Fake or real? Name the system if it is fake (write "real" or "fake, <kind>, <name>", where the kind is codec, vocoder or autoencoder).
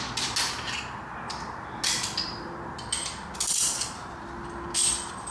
real